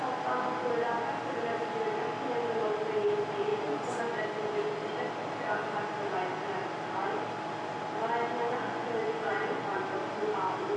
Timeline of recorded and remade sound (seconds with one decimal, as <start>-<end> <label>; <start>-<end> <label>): 0.0-3.5 recorded; 3.5-4.0 remade; 4.0-8.5 recorded; 8.5-9.8 remade; 9.8-10.8 recorded